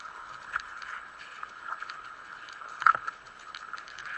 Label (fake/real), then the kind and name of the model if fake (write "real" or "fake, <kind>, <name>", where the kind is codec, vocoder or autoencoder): fake, codec, HILCodec